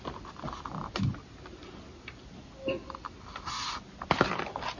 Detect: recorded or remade recorded